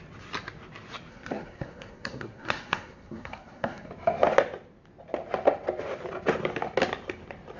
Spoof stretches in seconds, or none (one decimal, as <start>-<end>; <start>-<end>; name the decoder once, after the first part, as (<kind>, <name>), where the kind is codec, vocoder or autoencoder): 1.1-3.9 (codec, SNAC)